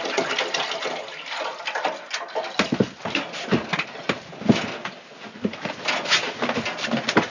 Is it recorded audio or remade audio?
recorded